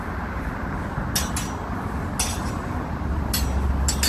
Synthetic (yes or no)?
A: no